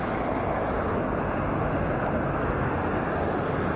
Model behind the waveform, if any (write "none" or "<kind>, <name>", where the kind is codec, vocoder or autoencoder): none